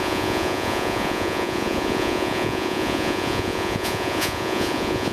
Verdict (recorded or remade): remade